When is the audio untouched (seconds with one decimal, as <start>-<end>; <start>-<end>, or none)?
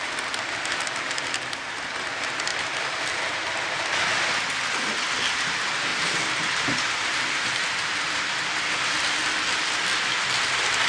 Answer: 0.0-2.5; 3.9-5.9; 8.3-10.9